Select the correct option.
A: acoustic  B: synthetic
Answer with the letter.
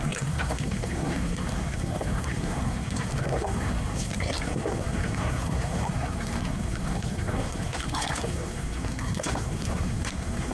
B